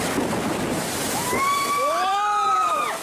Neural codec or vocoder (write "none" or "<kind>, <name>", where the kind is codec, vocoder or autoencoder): none